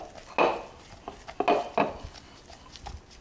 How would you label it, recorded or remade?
recorded